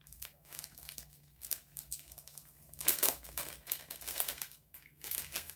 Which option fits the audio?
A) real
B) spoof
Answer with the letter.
B